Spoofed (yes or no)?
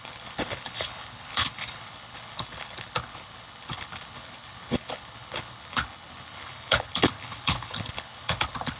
yes